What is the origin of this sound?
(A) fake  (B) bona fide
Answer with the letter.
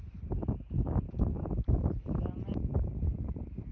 B